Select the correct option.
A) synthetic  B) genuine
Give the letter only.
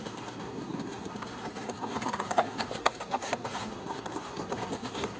A